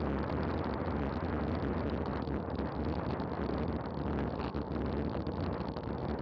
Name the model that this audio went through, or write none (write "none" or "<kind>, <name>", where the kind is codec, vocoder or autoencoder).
none